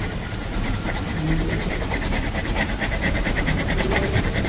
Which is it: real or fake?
fake